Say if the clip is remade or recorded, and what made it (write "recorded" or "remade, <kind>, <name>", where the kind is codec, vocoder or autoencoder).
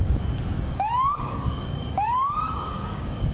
remade, codec, DAC